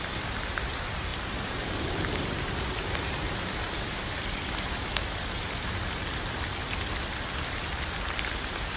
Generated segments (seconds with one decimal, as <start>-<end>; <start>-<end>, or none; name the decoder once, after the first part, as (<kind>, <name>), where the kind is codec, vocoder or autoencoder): 0.0-8.8 (vocoder, BigVGAN v2)